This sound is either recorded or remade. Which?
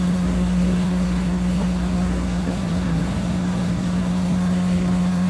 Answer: remade